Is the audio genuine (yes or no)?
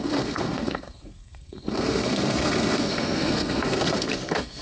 no